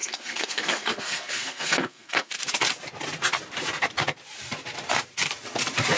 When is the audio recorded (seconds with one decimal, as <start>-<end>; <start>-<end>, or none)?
2.3-6.0